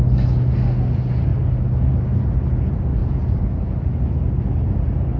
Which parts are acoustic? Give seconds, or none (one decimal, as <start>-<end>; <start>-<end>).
0.0-3.0; 4.1-5.2